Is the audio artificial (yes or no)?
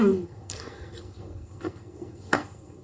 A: yes